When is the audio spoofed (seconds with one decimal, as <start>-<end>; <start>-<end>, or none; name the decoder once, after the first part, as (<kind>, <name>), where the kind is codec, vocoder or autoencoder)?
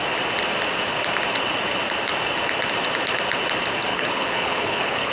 3.9-5.1 (codec, HILCodec)